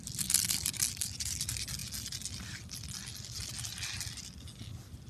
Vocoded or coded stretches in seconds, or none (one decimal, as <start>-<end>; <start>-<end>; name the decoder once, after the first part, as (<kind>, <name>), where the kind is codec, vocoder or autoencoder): 0.0-1.8 (vocoder, BigVGAN v2)